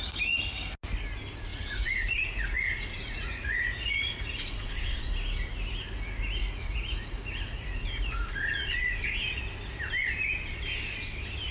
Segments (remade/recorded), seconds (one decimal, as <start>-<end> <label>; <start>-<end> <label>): 0.0-1.5 recorded; 1.5-5.1 remade; 5.1-6.4 recorded; 6.4-9.4 remade; 9.4-11.5 recorded